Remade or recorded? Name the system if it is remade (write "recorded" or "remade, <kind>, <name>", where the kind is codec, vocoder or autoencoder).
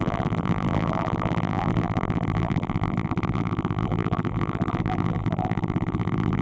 remade, vocoder, BigVGAN v2